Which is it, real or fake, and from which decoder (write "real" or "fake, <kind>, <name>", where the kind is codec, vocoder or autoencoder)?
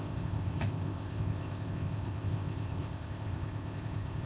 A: fake, codec, ZipCodec